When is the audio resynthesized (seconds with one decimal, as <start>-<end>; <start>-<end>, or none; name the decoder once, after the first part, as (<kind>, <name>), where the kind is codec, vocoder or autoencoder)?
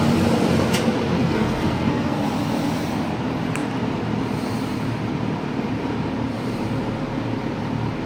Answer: 1.2-2.2 (codec, SNAC)